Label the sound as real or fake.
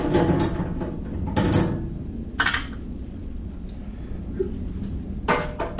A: real